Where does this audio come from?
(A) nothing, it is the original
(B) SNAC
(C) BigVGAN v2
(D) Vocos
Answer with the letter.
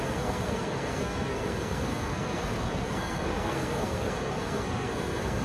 B